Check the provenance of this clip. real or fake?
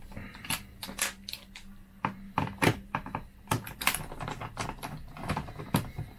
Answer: real